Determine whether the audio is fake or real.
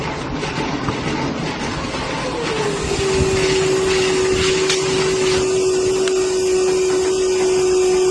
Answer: real